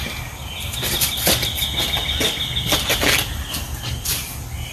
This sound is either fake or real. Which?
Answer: real